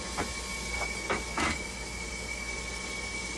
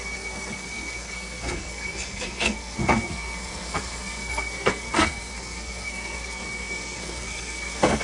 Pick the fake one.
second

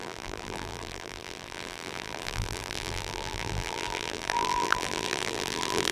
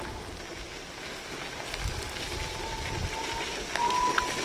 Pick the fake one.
first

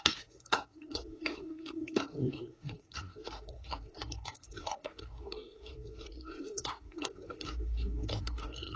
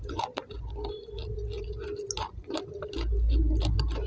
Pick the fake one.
first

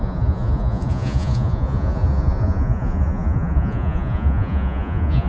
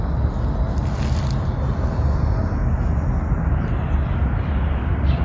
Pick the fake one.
first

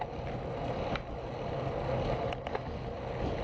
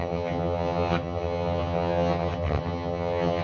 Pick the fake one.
second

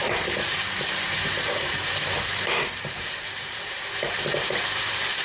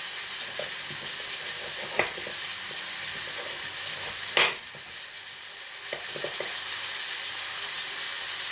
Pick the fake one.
first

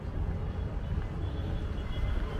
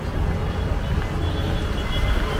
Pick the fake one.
first